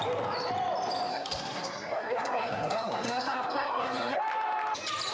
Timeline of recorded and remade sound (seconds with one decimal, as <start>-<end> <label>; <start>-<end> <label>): 0.0-1.1 recorded; 1.1-4.2 remade; 4.2-5.1 recorded